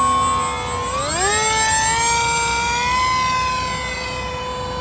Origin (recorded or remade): recorded